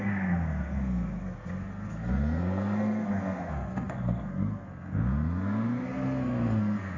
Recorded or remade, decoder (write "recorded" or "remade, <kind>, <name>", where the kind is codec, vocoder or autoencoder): remade, codec, SNAC